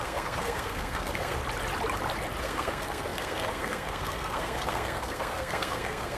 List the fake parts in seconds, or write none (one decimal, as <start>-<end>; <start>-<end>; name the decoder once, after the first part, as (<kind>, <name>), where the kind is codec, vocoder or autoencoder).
0.0-1.4 (codec, SNAC); 2.4-6.2